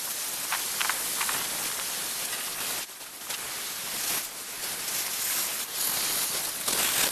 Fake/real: real